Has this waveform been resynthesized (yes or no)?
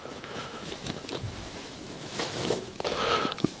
yes